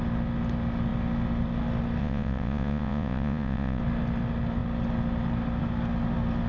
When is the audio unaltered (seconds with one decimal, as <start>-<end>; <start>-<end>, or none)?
0.0-2.0; 3.8-6.5